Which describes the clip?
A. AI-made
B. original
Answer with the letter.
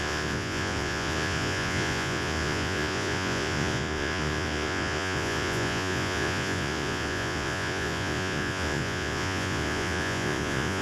A